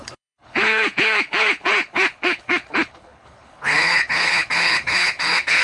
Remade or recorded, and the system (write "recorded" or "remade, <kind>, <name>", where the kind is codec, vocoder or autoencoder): remade, codec, HILCodec